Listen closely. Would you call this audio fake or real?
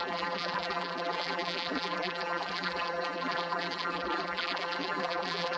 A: fake